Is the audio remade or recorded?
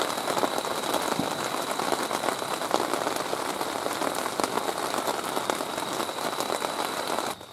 recorded